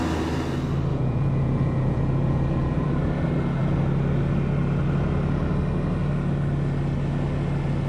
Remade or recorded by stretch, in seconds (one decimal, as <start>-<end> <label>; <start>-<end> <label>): 0.0-0.9 recorded; 0.9-2.9 remade; 2.9-7.9 recorded